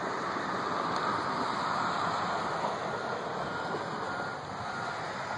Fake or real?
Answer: real